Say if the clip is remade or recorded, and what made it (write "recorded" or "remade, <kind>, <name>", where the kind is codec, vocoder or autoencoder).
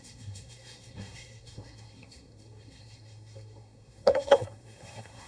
remade, codec, SNAC